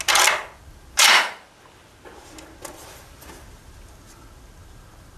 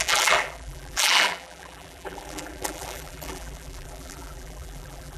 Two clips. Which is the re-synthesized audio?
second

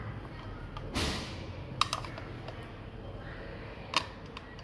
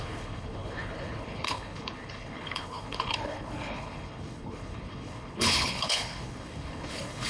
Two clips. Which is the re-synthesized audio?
second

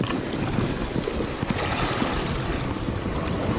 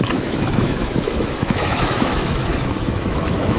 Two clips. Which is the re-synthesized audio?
second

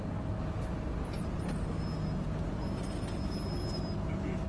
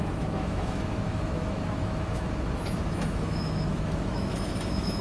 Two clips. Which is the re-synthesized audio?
second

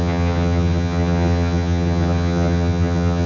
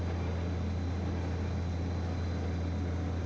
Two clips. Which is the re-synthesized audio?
first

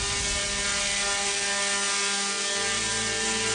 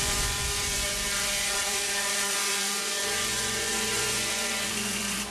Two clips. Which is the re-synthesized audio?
second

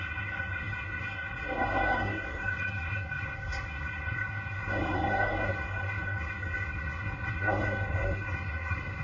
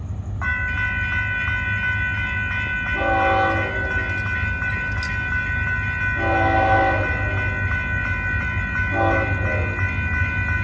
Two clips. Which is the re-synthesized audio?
first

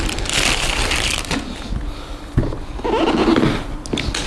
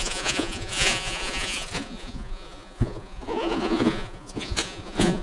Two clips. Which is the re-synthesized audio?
second